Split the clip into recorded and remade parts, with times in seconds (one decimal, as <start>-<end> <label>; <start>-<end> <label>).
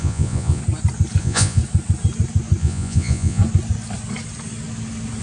0.0-0.6 remade; 0.6-1.2 recorded; 1.2-1.6 remade; 1.6-2.6 recorded; 2.6-3.4 remade; 3.4-5.2 recorded